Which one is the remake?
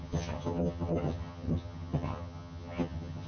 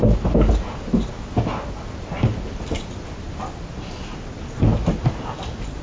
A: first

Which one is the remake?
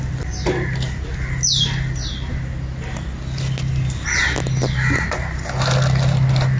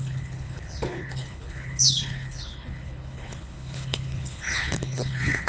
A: second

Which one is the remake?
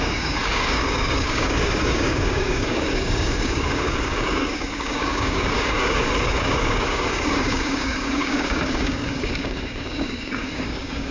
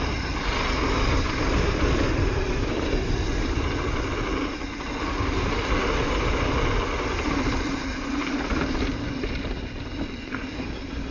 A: first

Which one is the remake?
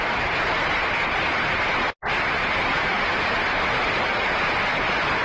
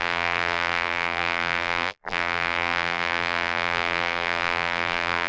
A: second